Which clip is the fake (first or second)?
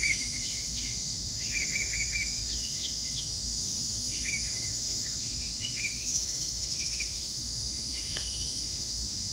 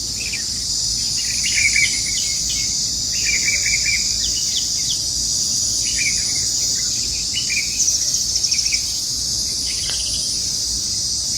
first